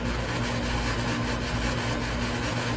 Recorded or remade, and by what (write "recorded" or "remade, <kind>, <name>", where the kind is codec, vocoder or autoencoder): recorded